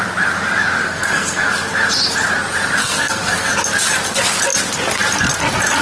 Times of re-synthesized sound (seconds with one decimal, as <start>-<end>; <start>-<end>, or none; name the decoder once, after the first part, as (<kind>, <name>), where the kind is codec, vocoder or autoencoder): 0.8-1.5 (codec, SNAC); 2.8-3.5